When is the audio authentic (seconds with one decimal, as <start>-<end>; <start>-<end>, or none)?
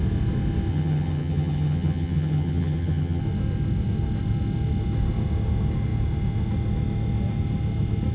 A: 0.0-0.7; 3.2-8.1